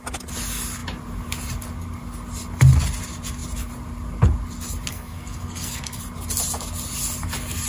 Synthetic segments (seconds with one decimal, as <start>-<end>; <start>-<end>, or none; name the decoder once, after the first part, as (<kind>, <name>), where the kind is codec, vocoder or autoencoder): 4.9-6.0 (codec, SNAC)